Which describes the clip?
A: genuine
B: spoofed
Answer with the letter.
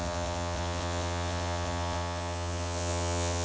B